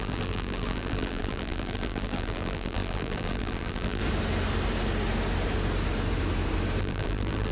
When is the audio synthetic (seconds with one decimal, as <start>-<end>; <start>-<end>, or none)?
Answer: 0.0-4.0; 6.8-7.5